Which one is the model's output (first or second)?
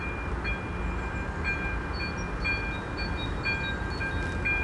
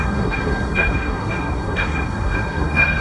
second